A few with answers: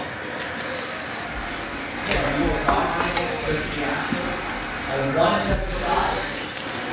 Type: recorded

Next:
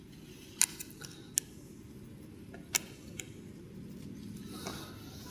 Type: recorded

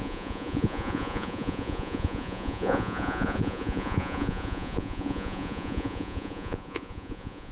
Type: remade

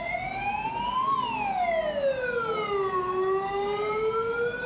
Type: recorded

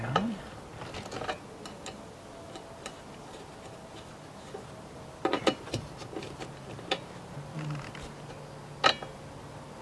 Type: recorded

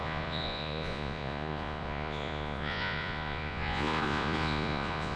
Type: remade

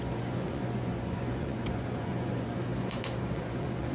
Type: remade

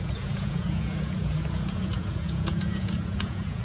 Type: remade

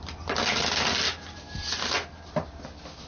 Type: recorded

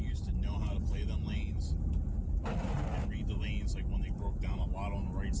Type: recorded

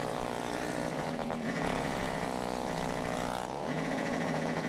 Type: remade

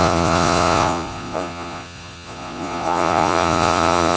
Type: remade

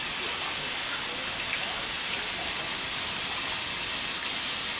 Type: recorded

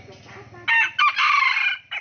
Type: recorded